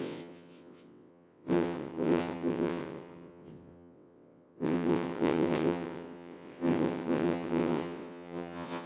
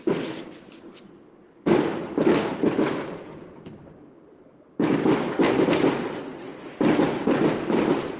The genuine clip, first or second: second